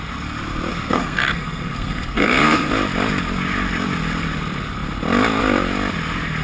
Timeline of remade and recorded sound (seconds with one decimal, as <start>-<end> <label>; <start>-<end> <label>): 0.0-0.7 recorded; 0.7-2.7 remade; 2.7-6.4 recorded